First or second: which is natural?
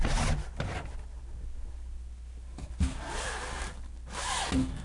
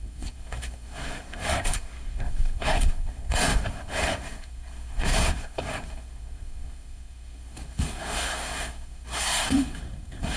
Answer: first